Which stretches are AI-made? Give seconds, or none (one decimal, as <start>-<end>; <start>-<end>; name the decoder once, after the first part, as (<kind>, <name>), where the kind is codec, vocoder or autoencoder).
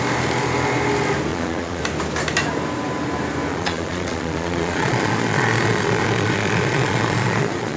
1.3-1.8 (vocoder, Vocos); 3.5-7.8